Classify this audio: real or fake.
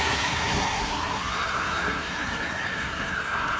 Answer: fake